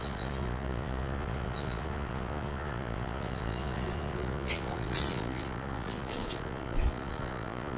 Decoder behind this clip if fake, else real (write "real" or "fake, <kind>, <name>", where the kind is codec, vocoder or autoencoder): fake, vocoder, Vocos